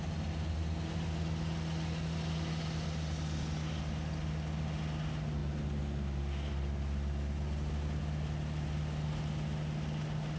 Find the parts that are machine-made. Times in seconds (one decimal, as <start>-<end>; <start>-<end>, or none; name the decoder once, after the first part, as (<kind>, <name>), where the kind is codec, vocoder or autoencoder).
none